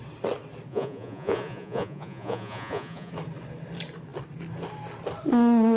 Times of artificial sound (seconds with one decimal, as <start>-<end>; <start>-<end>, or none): 0.7-3.1